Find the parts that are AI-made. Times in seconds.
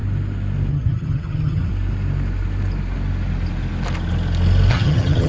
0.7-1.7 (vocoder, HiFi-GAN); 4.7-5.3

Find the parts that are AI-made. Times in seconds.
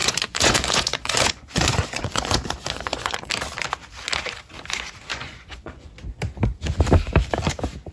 0.0-3.3 (vocoder, Vocos); 5.1-5.9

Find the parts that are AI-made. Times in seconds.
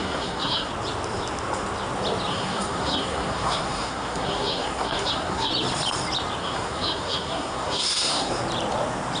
0.0-0.7 (codec, SNAC); 2.3-5.5; 6.4-8.3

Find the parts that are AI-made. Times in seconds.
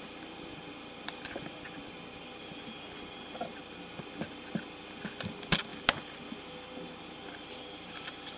none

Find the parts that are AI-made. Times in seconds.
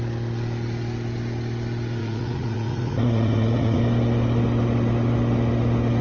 2.0-3.8 (vocoder, Vocos)